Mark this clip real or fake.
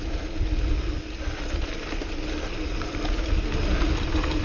real